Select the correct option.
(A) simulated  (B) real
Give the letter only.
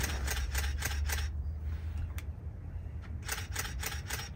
B